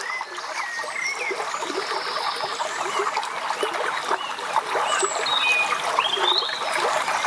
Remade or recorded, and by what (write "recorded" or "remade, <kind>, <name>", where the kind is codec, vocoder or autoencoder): recorded